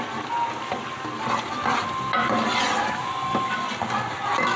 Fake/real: real